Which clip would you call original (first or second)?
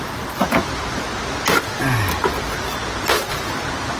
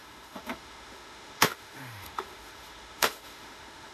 first